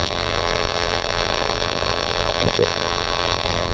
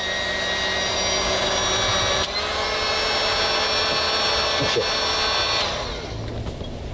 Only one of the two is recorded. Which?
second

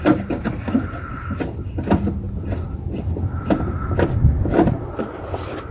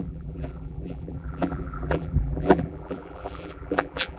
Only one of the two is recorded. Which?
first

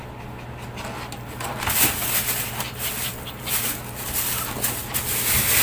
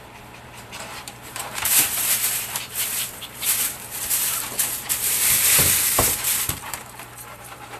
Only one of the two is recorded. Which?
first